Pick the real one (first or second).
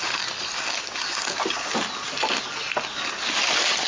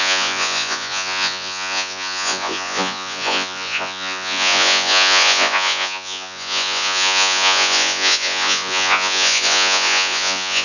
first